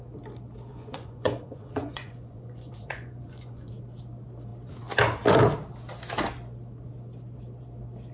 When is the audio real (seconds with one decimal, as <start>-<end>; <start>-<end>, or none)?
0.0-0.7; 3.7-8.1